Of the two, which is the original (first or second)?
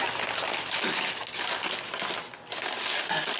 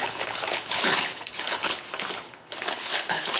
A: first